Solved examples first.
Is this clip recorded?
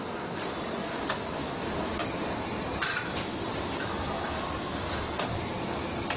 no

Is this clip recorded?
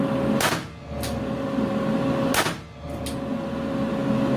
yes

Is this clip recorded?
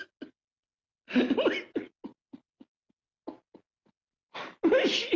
yes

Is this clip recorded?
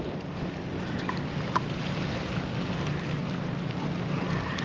yes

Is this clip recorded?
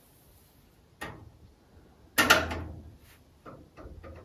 yes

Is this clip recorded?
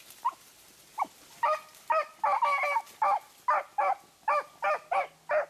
yes